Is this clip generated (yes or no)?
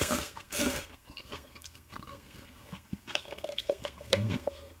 yes